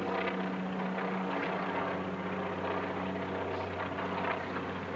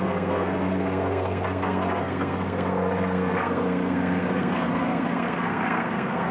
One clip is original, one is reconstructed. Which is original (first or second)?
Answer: first